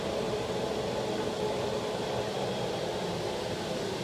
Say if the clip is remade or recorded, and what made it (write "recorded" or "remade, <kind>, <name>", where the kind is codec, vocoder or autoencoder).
recorded